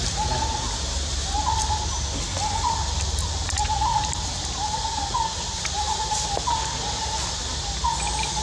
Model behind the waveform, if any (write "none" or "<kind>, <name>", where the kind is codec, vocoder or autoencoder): none